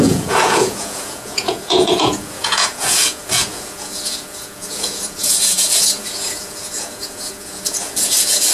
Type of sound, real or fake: fake